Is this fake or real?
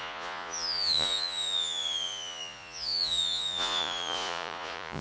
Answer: fake